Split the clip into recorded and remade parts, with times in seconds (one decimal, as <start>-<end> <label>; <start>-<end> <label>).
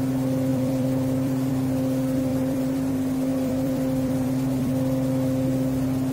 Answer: 0.0-0.5 recorded; 0.5-1.5 remade; 1.5-2.3 recorded; 2.3-2.9 remade; 2.9-3.3 recorded; 3.3-4.7 remade; 4.7-6.1 recorded